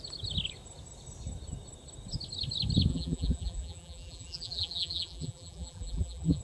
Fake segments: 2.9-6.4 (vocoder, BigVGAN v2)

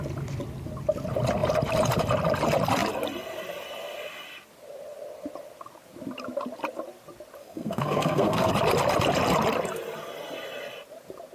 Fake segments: 7.4-8.5 (codec, SNAC)

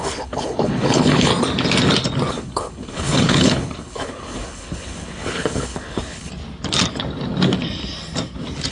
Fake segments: 0.0-1.3 (codec, HILCodec); 2.3-6.3

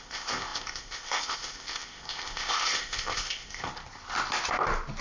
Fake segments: 0.0-3.7 (codec, ZipCodec)

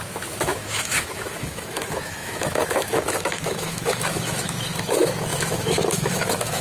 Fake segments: 0.0-6.6 (autoencoder, DAC-VAE)

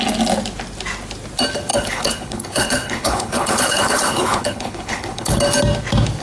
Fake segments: 1.7-5.4 (codec, HILCodec)

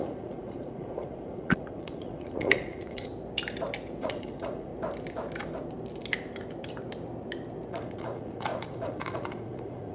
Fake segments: 0.0-3.1 (vocoder, Vocos); 4.0-4.7; 7.7-9.9

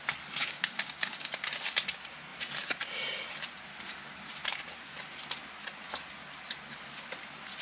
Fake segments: 0.4-1.3 (codec, DAC)